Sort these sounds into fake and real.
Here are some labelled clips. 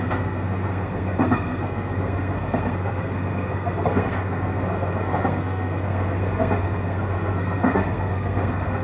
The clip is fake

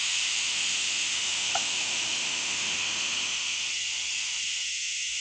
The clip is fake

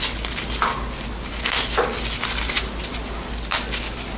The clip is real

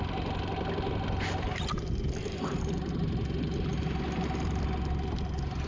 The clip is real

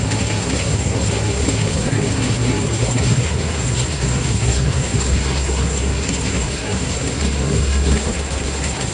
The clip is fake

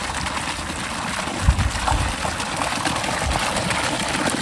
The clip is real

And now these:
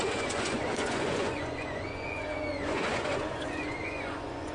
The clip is fake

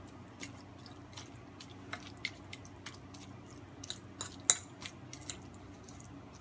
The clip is real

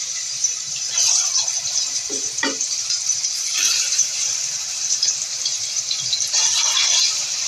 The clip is fake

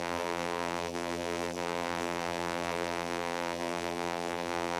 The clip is fake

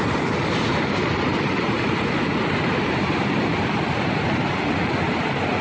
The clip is real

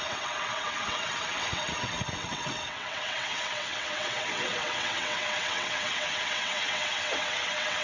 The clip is fake